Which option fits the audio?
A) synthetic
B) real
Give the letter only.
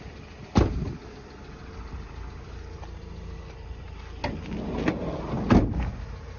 B